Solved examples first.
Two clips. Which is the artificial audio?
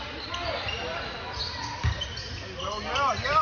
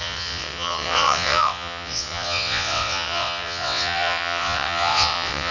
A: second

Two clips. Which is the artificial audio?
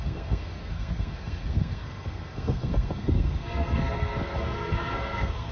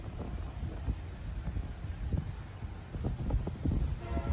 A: first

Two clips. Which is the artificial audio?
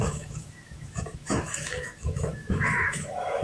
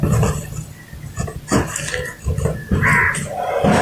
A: first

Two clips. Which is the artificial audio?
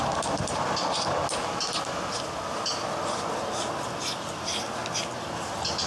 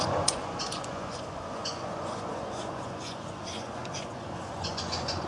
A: second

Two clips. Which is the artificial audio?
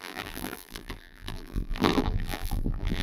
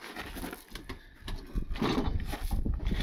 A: first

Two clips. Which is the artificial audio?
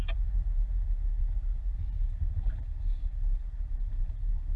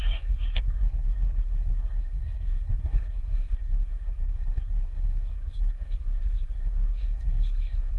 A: second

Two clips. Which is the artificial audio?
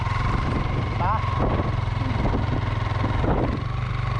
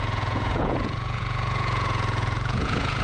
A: second